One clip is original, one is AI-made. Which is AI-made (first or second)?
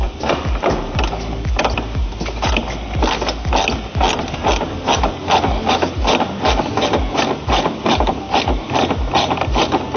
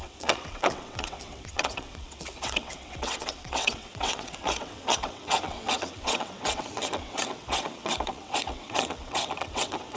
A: second